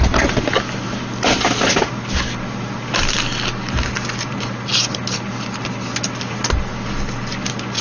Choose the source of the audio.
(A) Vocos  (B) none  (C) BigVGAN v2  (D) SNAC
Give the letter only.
B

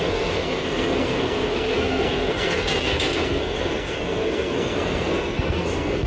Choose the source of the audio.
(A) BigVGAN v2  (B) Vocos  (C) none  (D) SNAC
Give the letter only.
D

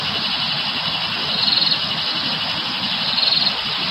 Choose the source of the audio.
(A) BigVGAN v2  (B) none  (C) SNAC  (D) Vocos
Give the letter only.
B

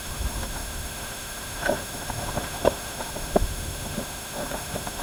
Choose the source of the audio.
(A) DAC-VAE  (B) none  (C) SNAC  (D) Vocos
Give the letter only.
A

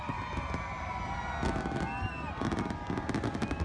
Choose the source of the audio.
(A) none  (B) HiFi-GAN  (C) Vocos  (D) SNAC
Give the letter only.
A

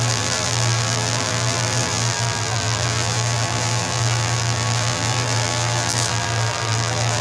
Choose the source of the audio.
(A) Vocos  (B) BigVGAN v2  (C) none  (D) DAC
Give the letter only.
B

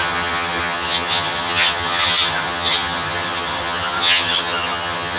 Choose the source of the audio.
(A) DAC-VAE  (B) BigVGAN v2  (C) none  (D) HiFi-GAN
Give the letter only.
D